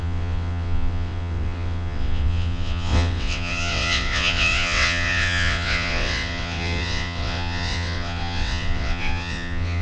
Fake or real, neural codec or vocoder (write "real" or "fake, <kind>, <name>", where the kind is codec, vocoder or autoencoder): fake, vocoder, WaveNeXt